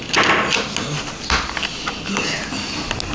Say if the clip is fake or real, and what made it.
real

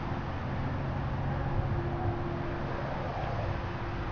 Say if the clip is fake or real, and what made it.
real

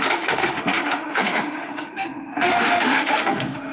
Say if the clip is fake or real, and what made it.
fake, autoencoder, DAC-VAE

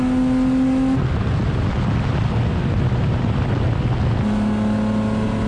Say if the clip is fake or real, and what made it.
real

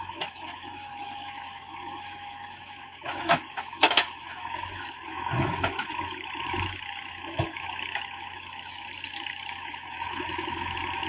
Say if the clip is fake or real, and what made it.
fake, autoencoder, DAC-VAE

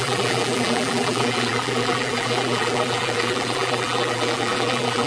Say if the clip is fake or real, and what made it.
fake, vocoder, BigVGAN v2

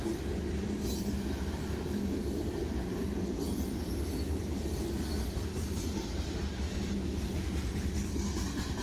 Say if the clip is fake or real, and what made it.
real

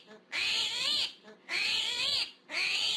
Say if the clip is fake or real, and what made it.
fake, vocoder, BigVGAN v2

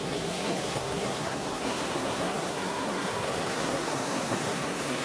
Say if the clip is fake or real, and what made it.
fake, codec, SNAC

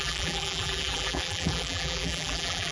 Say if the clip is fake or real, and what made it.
fake, vocoder, BigVGAN v2